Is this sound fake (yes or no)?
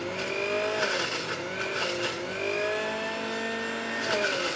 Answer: no